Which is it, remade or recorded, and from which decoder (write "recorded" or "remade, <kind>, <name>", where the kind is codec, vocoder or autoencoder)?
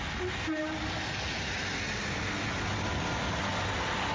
recorded